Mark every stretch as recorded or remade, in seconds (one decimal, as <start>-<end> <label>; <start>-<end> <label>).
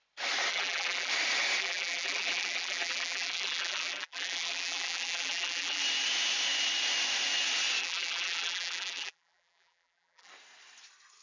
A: 0.0-0.5 recorded; 0.5-1.1 remade; 1.1-1.6 recorded; 1.6-5.8 remade; 5.8-7.8 recorded; 7.8-10.3 remade; 10.3-11.2 recorded